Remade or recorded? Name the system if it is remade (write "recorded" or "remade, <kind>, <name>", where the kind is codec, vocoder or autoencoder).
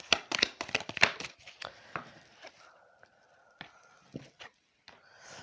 remade, vocoder, BigVGAN v2